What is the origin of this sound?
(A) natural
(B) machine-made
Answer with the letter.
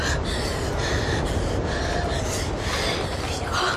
A